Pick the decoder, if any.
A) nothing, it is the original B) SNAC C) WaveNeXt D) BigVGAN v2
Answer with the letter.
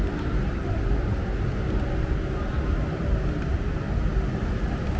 A